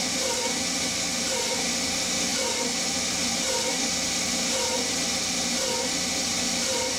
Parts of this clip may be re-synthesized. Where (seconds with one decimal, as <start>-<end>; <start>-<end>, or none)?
none